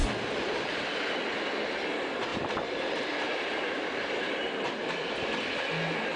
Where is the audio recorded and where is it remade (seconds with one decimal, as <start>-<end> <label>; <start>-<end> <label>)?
0.0-1.1 remade; 1.1-2.3 recorded; 2.3-5.0 remade; 5.0-6.2 recorded